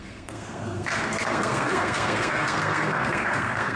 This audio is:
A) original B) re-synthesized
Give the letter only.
B